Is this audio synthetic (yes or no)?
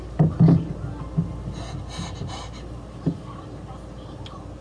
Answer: no